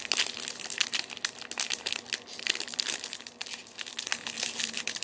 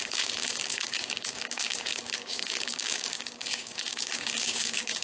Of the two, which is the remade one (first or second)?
second